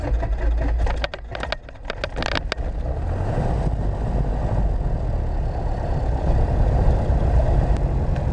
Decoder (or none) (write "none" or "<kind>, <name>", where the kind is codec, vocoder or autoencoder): none